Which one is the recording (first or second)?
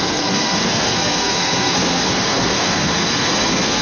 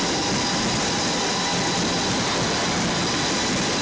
second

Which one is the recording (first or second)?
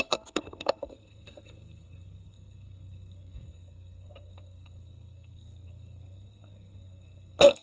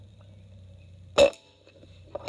second